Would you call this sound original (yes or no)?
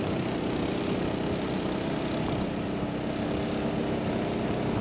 yes